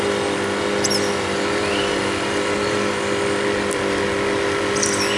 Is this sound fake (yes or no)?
no